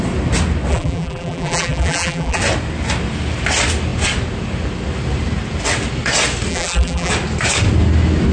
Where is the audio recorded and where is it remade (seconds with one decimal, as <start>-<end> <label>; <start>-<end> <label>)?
0.0-0.7 recorded; 0.7-2.4 remade; 2.4-6.5 recorded; 6.5-7.1 remade; 7.1-8.3 recorded